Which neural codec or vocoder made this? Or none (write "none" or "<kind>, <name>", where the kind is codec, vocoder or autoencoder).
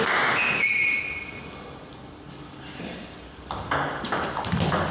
none